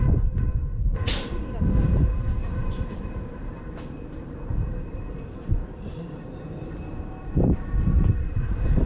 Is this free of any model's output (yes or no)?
no